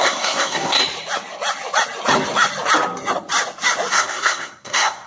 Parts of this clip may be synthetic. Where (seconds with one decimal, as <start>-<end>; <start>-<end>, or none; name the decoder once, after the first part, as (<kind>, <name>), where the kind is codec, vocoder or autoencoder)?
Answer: 0.0-0.8 (codec, SNAC); 3.9-5.1